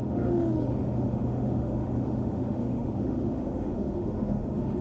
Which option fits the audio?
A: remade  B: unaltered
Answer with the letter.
A